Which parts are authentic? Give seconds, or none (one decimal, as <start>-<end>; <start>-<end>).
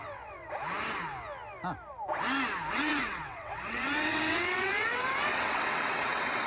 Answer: 0.4-2.7